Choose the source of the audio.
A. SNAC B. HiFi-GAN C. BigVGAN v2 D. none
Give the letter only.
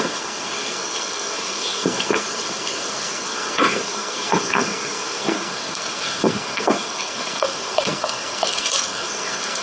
A